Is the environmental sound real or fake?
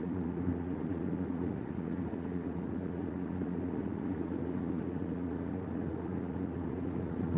fake